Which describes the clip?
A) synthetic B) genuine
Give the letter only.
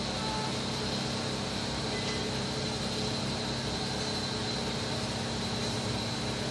B